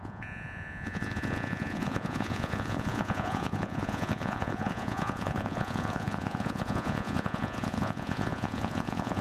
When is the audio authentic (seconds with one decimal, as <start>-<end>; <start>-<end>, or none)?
none